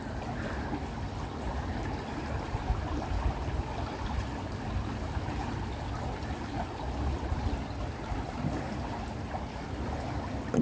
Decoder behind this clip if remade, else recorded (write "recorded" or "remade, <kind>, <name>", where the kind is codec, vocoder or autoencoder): recorded